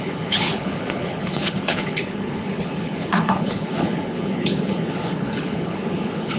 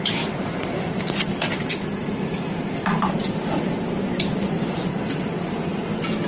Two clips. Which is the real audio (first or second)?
second